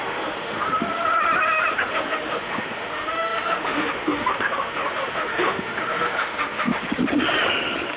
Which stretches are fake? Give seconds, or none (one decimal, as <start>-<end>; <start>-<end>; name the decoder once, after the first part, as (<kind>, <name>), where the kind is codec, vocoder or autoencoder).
0.0-0.7 (autoencoder, DAC-VAE); 1.9-6.7